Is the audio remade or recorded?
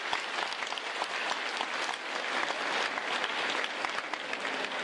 recorded